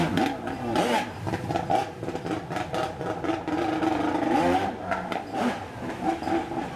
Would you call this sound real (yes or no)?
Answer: yes